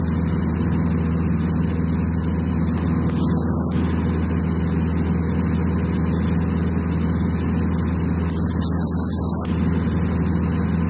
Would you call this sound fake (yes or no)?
no